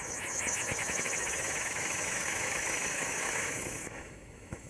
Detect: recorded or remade remade